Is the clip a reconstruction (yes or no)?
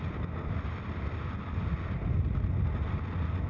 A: no